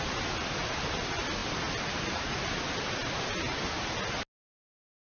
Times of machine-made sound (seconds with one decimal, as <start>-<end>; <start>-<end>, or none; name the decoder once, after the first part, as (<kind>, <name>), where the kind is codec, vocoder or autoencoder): none